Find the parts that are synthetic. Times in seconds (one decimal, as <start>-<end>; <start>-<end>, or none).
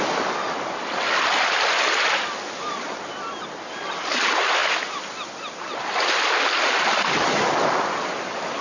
none